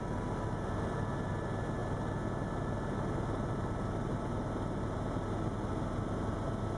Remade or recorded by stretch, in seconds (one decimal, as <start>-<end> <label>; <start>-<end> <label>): 0.0-6.8 recorded